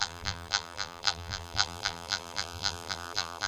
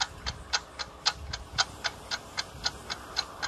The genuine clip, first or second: second